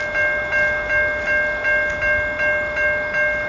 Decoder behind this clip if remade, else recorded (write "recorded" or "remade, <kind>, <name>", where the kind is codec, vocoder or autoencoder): recorded